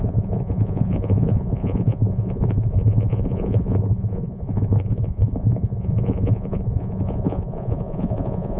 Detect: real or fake fake